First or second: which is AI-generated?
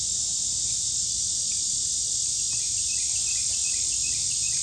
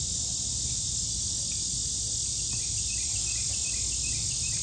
first